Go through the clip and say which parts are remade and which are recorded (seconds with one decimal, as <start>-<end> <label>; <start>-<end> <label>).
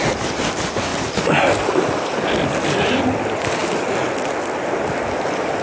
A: 0.0-5.6 recorded